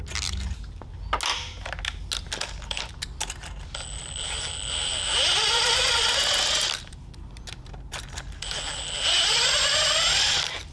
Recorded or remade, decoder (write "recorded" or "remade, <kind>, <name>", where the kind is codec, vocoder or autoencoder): recorded